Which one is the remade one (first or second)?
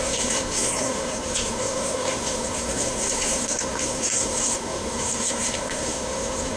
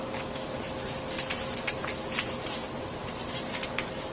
first